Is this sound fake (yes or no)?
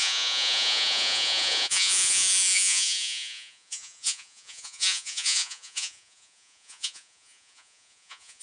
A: yes